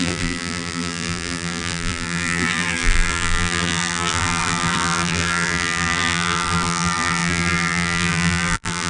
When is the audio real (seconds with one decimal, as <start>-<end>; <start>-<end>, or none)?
none